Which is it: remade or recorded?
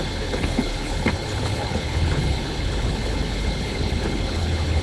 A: remade